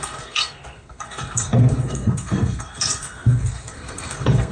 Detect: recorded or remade remade